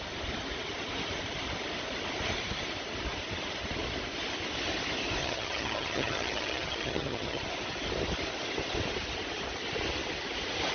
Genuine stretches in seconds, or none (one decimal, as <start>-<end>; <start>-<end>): 0.0-5.2; 7.4-10.7